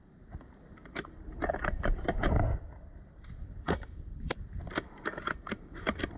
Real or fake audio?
fake